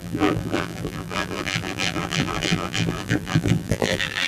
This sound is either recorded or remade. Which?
remade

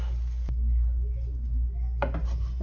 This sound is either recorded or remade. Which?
recorded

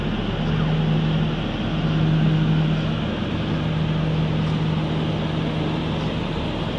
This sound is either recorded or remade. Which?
recorded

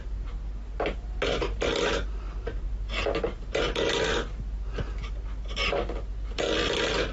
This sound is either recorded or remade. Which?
recorded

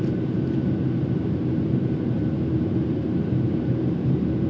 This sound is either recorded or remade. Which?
remade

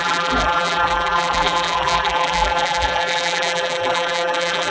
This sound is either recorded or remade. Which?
remade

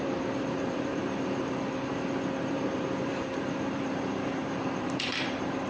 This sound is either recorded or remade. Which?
remade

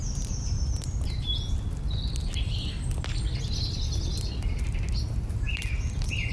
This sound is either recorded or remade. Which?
recorded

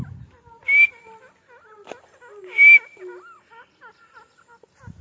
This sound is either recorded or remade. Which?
recorded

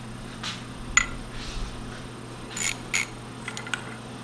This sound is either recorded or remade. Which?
recorded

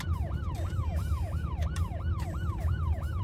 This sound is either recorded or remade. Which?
remade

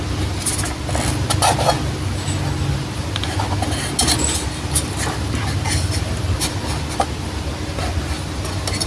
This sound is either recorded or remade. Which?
recorded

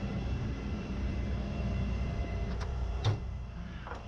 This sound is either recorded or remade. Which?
remade